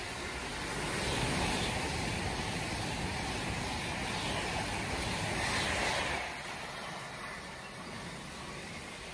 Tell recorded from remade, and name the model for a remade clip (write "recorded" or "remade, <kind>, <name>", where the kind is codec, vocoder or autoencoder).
recorded